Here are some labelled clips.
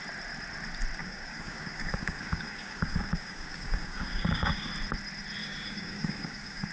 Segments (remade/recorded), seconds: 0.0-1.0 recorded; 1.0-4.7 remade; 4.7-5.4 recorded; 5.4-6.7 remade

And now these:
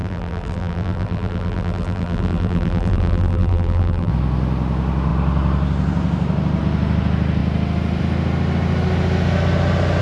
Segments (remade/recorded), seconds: 0.0-4.1 remade; 4.1-10.0 recorded